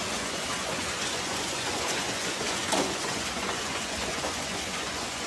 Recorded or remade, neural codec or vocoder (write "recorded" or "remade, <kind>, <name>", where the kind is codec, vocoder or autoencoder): remade, vocoder, Vocos